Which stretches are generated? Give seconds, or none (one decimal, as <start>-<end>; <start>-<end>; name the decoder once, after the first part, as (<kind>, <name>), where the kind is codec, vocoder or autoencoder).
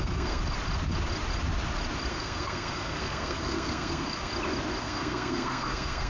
0.0-0.4 (codec, SNAC); 2.1-4.3; 4.8-6.1